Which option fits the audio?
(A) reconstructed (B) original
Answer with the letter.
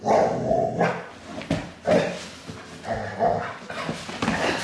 B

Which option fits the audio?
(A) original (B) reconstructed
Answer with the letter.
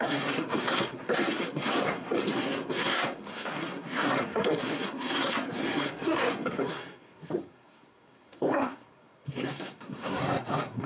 B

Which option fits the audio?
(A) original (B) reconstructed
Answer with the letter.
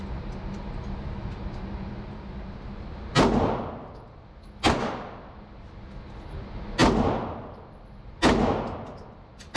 A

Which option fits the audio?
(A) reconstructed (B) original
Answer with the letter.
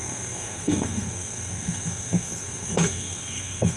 A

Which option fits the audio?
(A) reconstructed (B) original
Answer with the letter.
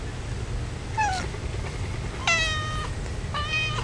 B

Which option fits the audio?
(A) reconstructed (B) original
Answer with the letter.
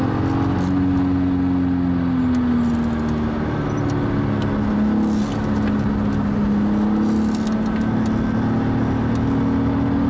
B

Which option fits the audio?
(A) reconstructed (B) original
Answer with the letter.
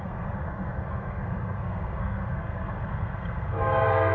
A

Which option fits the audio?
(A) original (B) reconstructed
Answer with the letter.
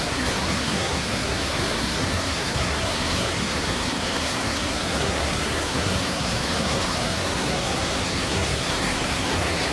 B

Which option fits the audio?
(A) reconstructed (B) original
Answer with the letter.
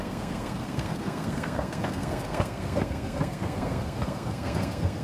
A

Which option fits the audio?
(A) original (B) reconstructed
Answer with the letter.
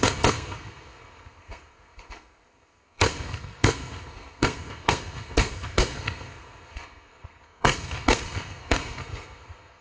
B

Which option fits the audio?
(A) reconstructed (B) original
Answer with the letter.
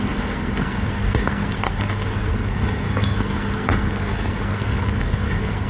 A